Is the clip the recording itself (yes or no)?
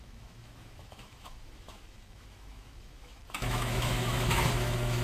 no